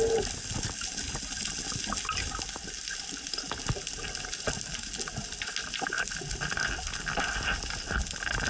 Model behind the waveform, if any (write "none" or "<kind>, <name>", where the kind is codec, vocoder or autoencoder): none